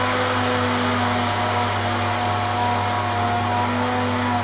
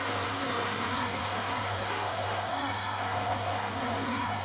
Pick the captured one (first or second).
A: first